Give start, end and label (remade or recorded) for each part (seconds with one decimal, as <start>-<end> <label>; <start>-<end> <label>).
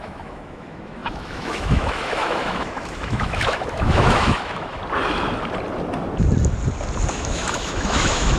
0.0-4.8 remade; 4.8-7.1 recorded; 7.1-8.4 remade